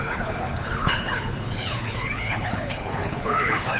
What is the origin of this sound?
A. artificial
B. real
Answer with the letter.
A